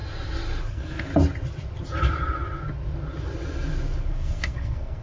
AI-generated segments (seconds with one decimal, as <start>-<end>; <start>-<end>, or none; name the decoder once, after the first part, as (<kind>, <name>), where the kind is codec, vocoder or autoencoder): 0.7-1.1 (codec, SNAC); 4.1-5.0